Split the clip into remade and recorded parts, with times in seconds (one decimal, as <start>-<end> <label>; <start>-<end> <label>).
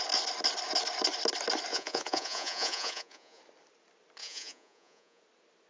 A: 0.0-1.7 recorded; 1.7-3.4 remade; 3.4-4.2 recorded; 4.2-5.2 remade; 5.2-5.7 recorded